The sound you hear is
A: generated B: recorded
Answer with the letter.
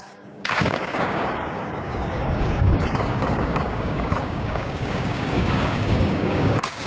A